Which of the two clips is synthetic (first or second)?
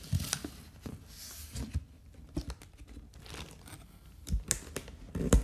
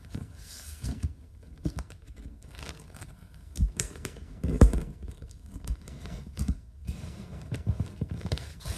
second